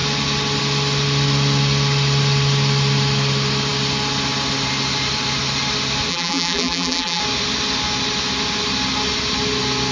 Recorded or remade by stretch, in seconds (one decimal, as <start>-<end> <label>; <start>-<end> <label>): 0.0-6.1 recorded; 6.1-7.2 remade; 7.2-9.9 recorded